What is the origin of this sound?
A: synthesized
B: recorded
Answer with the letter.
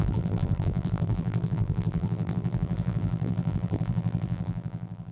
A